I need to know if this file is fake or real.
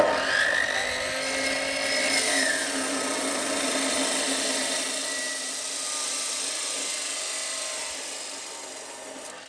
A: real